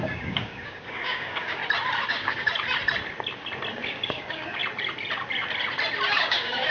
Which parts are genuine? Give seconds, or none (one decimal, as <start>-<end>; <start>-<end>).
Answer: 1.6-2.1; 2.5-3.7; 4.6-6.1